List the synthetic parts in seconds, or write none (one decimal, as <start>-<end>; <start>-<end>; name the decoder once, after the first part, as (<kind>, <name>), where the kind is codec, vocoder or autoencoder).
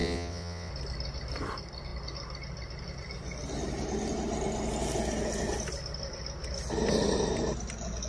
0.0-0.7 (vocoder, WaveNeXt)